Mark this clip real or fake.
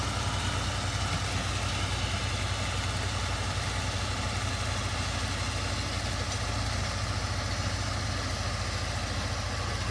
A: real